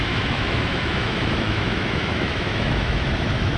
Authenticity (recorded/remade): remade